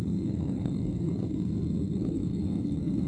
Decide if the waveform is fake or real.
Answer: fake